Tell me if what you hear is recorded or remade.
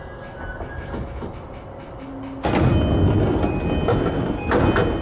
recorded